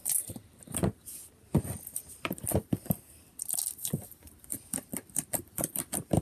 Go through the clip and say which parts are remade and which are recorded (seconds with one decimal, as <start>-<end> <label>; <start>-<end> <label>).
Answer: 0.0-6.2 remade